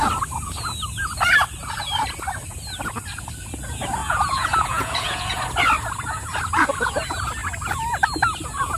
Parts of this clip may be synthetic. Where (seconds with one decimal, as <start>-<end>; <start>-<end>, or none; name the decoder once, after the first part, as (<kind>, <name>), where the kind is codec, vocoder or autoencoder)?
4.0-5.4 (vocoder, Vocos)

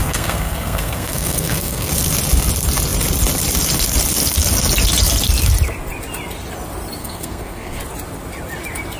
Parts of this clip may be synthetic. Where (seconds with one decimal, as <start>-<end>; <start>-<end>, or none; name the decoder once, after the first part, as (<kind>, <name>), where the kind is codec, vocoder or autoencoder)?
0.0-1.9 (codec, SNAC); 7.0-7.8

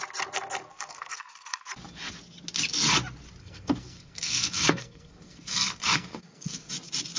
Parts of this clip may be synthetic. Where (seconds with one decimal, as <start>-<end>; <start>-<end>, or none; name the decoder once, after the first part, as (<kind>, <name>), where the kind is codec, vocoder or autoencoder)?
0.7-1.7 (codec, SNAC); 3.4-6.7

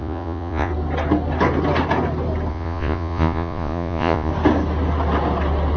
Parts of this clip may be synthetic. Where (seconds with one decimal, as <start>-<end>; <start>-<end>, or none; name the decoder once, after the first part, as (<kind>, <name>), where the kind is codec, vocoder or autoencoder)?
0.0-0.7 (vocoder, Vocos); 2.5-4.3

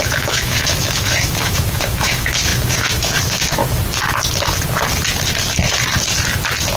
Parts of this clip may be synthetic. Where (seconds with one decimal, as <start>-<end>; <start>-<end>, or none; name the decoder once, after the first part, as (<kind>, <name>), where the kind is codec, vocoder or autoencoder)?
0.0-3.6 (autoencoder, DAC-VAE)

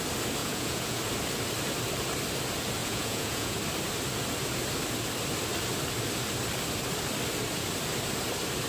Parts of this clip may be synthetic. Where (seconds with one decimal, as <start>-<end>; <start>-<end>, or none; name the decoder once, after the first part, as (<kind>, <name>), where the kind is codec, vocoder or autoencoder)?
0.4-1.0 (vocoder, Vocos); 2.8-3.6

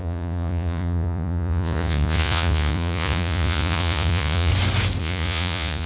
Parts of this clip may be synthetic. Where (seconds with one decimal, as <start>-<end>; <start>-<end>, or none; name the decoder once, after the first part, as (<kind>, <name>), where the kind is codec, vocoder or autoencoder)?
0.0-4.5 (vocoder, Vocos); 5.0-5.9